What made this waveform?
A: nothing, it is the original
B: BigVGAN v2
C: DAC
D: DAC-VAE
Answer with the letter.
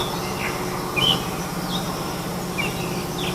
A